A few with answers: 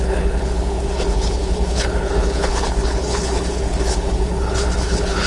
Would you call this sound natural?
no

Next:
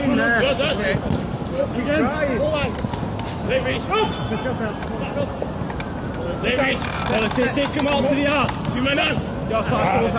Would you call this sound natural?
yes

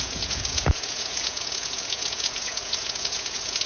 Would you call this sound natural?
no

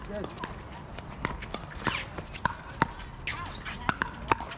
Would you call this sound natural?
yes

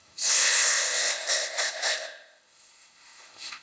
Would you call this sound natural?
no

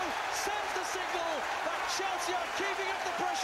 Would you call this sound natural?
yes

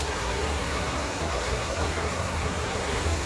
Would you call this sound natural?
no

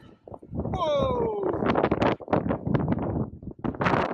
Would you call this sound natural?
yes